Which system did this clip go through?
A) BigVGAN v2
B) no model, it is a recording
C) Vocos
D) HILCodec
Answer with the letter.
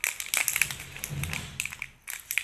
B